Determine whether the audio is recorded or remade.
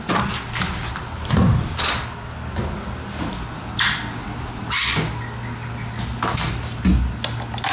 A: recorded